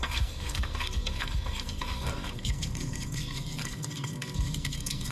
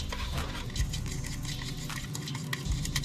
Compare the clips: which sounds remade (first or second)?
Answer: first